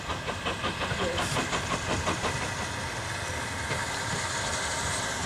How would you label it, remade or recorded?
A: recorded